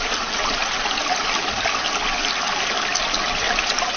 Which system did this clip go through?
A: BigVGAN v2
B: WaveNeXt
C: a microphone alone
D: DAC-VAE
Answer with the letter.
C